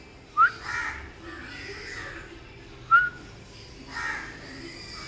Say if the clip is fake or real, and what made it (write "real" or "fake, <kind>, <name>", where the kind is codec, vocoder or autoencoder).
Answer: real